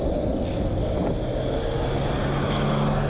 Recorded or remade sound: recorded